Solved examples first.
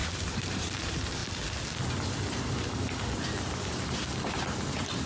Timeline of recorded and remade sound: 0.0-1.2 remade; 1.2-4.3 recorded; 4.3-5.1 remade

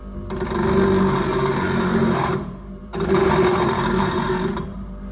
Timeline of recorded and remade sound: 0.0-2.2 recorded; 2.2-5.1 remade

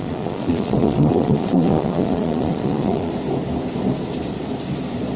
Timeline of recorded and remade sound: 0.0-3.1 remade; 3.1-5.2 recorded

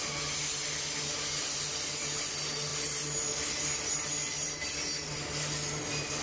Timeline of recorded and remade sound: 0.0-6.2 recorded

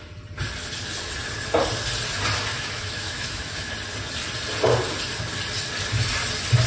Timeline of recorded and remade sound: 0.0-2.5 recorded; 2.5-3.7 remade; 3.7-6.7 recorded